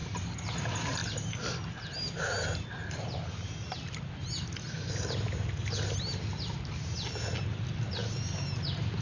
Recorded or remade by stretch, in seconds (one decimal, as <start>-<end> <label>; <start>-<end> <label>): 0.0-9.0 recorded